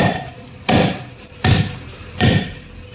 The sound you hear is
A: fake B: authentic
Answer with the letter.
A